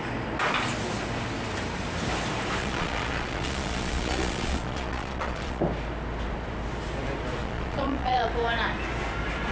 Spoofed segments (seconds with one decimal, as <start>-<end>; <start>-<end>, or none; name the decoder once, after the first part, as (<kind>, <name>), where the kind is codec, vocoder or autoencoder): 2.6-5.6 (vocoder, Vocos); 7.4-8.3